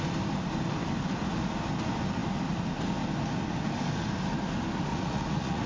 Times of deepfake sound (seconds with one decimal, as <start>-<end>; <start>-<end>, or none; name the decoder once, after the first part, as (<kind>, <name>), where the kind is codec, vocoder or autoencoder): 4.9-5.7 (vocoder, Vocos)